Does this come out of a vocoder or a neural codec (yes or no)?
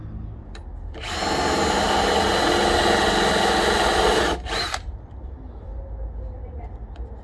no